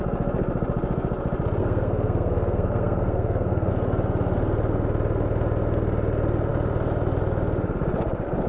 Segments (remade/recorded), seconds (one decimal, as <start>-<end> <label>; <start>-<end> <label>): 0.0-1.6 recorded; 1.6-3.7 remade; 3.7-8.5 recorded